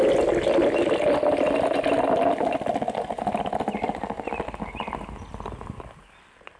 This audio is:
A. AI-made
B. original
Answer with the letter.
B